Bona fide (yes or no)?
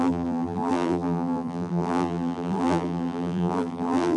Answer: no